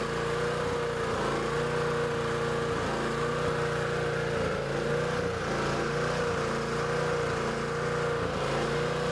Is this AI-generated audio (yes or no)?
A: no